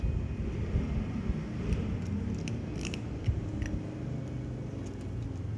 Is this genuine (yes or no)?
yes